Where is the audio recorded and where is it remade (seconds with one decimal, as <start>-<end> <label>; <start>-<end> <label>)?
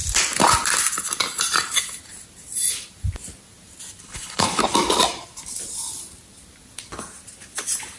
0.0-4.0 recorded; 4.0-4.6 remade; 4.6-8.0 recorded